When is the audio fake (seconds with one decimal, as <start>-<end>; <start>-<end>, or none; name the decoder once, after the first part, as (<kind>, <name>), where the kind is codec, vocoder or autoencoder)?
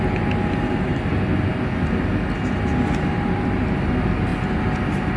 none